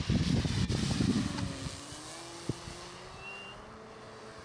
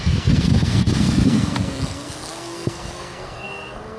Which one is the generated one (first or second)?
second